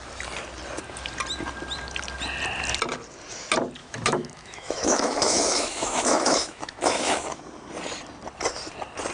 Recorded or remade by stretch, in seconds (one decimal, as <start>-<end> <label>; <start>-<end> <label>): 0.0-3.8 recorded; 3.8-7.4 remade; 7.4-9.1 recorded